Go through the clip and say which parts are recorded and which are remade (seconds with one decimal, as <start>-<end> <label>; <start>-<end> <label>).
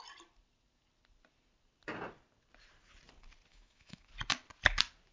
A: 0.0-3.5 recorded; 3.5-4.1 remade; 4.1-5.1 recorded